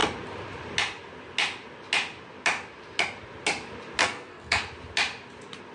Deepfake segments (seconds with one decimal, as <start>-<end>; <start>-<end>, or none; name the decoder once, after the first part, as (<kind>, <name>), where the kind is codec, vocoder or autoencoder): 4.0-4.6 (codec, SNAC)